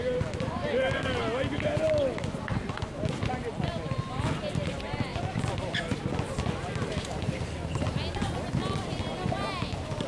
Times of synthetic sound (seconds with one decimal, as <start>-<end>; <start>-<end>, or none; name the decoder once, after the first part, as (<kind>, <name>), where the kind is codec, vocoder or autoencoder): none